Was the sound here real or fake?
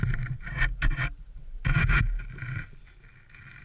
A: real